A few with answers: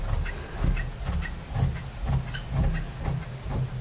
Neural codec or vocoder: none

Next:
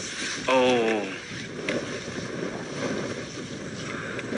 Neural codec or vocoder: none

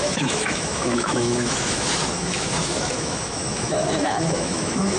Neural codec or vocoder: autoencoder, DAC-VAE